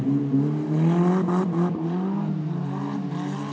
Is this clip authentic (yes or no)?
yes